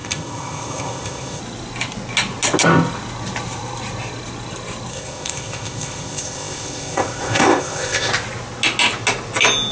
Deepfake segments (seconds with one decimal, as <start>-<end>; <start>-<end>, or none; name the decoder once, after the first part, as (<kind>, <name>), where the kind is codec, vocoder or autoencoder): 0.0-1.4 (codec, ZipCodec); 4.9-8.1